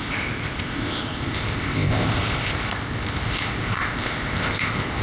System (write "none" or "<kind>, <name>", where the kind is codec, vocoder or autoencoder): codec, ZipCodec